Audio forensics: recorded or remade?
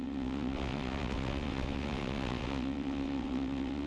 remade